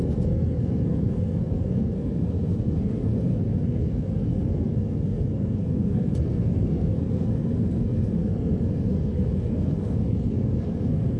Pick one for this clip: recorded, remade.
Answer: remade